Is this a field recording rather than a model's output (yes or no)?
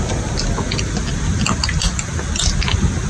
yes